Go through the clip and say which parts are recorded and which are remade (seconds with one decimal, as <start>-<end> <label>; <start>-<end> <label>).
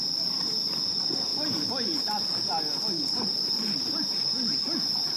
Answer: 0.0-5.2 recorded